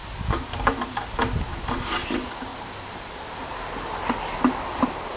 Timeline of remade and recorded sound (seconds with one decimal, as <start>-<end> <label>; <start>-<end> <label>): 0.0-1.5 remade; 1.5-2.5 recorded; 2.5-4.2 remade; 4.2-5.2 recorded